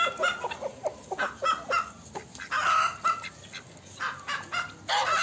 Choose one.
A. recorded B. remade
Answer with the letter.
A